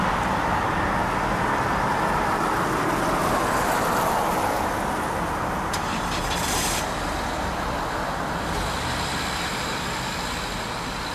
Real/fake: real